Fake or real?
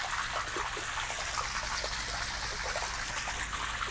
real